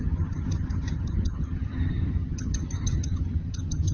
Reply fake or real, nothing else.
fake